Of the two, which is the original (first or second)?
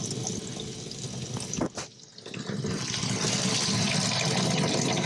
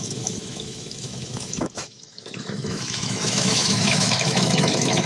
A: first